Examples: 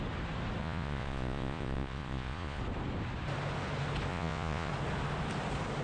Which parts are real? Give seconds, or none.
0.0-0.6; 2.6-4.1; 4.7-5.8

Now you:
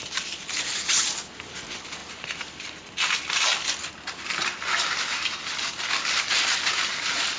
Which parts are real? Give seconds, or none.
0.0-7.4

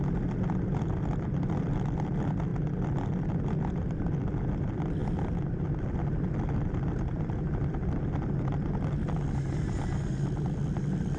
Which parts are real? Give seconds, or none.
0.0-11.2